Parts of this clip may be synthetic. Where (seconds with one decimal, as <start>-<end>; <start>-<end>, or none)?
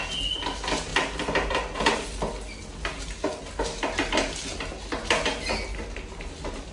none